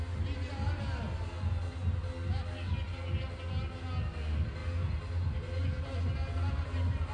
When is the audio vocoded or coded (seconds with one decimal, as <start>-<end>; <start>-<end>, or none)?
none